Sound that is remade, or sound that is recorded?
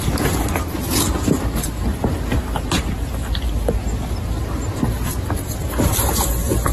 recorded